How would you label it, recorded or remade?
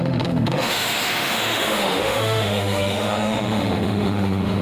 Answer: remade